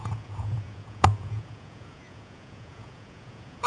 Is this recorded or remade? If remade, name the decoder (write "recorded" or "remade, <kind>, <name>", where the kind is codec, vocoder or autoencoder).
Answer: remade, vocoder, Vocos